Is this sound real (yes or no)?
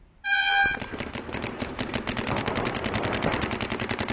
yes